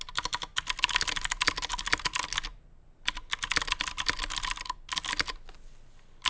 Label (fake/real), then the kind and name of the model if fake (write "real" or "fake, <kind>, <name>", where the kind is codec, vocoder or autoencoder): real